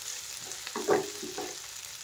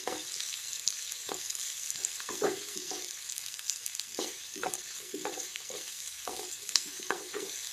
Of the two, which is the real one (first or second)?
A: first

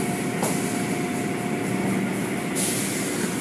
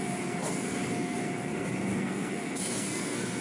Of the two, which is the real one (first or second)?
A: first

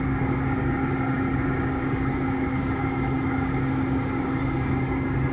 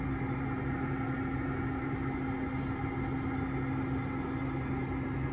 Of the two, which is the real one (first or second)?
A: second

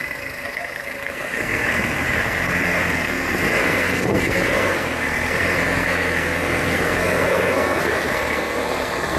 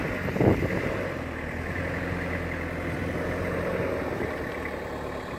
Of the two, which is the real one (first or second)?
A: second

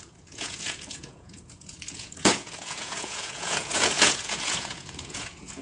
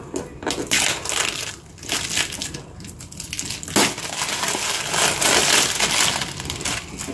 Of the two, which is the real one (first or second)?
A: second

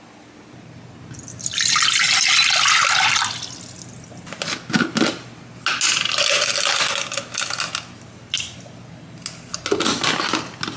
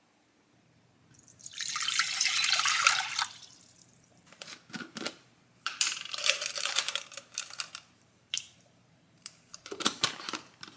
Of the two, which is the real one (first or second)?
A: first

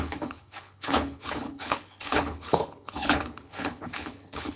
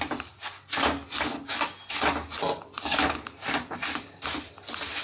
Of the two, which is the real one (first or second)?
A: second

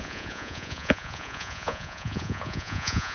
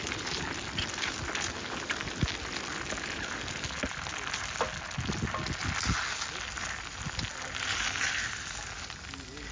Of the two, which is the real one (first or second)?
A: second